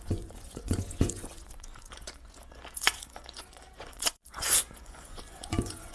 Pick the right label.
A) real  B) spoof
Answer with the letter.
B